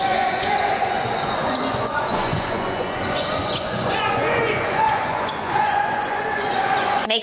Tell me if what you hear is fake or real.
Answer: fake